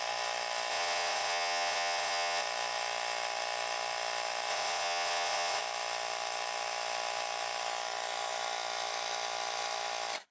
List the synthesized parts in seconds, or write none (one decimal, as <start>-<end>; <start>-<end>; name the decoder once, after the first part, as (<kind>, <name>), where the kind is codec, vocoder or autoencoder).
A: 0.7-2.4 (vocoder, WaveNeXt); 4.5-5.6